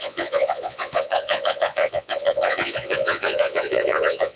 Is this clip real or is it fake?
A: fake